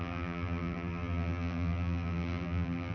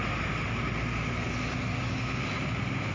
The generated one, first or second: first